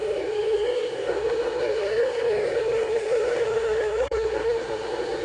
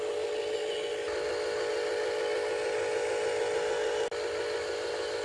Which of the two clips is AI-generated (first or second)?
first